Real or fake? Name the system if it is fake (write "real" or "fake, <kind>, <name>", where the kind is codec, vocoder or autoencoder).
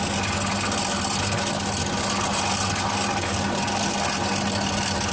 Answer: real